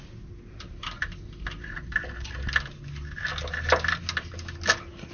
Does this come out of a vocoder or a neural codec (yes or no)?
no